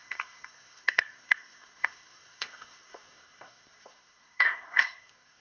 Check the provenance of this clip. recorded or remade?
remade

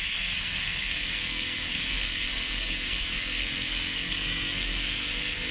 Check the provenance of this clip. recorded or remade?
remade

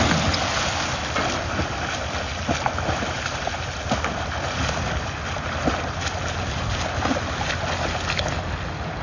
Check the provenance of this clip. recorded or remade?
recorded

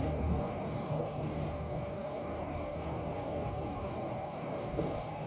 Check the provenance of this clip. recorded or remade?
remade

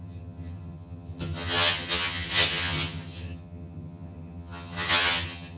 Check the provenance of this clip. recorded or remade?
remade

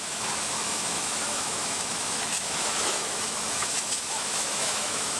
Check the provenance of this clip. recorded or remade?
remade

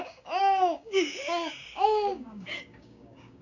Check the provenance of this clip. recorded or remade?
remade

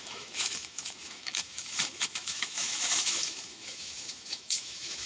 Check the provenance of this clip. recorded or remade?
remade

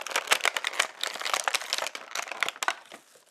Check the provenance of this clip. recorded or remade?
recorded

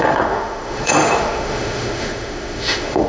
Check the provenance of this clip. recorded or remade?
remade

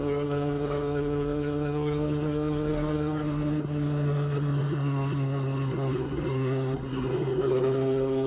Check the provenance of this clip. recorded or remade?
remade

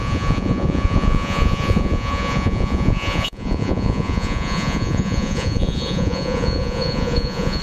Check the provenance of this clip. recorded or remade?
remade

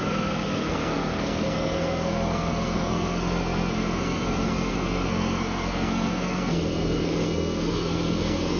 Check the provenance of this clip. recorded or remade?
remade